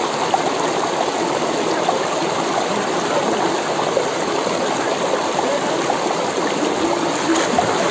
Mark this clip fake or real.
real